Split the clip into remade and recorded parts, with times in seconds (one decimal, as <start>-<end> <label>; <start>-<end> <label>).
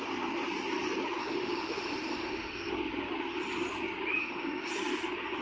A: 0.0-1.2 recorded; 1.2-2.7 remade; 2.7-4.2 recorded; 4.2-4.7 remade; 4.7-5.4 recorded